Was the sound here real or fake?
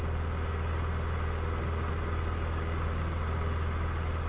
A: real